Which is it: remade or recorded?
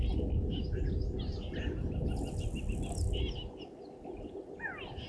recorded